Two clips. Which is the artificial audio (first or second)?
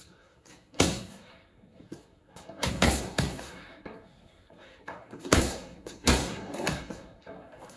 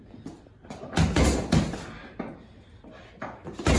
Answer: first